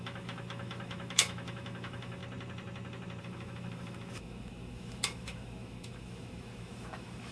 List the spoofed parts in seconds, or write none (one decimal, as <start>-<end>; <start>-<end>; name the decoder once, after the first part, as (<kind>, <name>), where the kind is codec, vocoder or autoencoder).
0.0-2.2 (autoencoder, DAC-VAE); 3.2-7.3